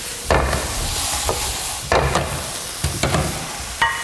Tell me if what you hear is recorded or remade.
recorded